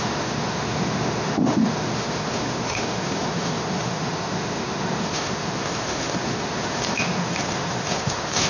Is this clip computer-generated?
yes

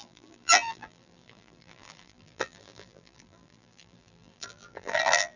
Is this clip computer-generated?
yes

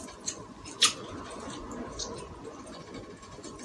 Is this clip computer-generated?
yes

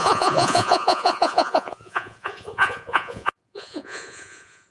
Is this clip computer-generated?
yes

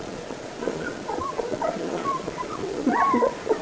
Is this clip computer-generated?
yes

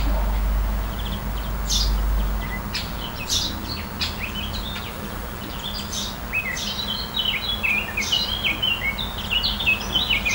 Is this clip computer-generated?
no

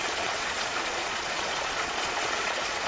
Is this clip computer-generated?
yes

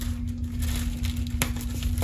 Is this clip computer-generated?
no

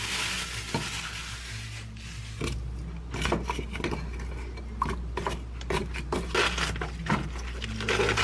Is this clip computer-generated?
no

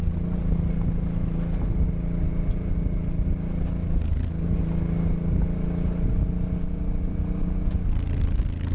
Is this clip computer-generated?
no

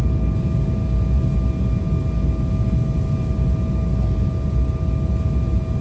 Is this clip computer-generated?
no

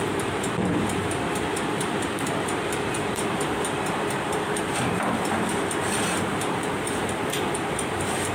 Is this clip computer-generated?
yes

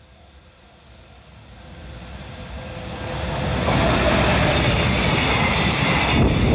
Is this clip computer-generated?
no